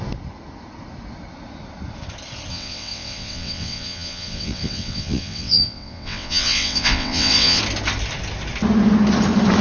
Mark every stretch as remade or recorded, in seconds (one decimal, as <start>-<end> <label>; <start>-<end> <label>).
0.0-2.5 recorded; 2.5-7.6 remade; 7.6-9.6 recorded